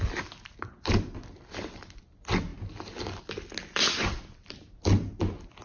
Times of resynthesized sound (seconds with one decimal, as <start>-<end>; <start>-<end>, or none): none